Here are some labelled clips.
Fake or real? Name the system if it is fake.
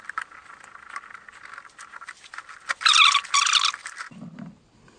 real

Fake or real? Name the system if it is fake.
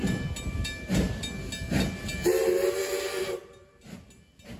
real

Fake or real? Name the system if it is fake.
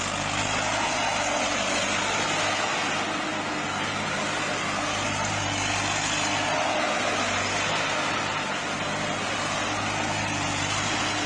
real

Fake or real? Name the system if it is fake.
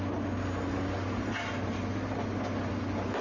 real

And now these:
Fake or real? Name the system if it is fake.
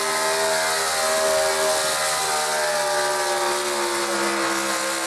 real